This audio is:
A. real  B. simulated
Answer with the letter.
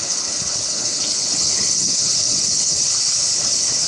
B